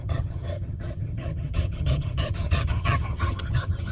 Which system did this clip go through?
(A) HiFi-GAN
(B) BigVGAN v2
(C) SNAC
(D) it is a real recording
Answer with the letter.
A